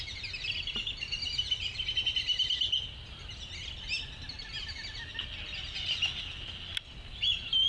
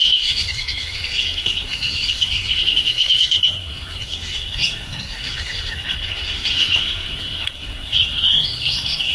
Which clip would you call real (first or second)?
first